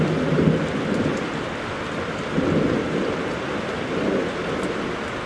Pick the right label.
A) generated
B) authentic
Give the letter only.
B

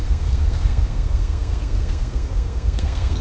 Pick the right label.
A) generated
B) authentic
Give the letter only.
A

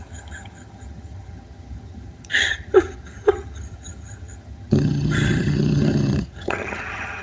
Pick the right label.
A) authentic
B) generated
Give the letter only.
B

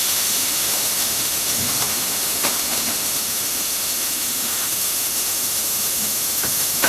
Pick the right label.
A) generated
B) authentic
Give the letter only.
A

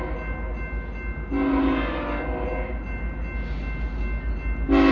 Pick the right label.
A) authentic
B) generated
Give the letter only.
A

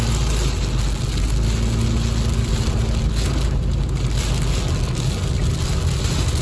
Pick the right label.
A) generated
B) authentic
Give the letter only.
B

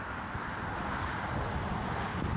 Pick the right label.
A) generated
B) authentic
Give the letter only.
B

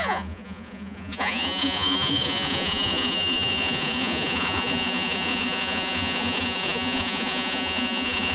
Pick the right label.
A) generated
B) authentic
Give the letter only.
A